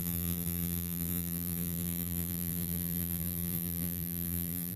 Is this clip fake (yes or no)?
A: yes